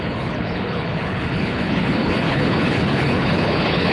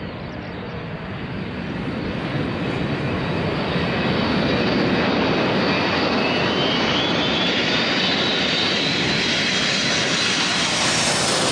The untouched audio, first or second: second